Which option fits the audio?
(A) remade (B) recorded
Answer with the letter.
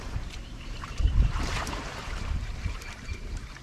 A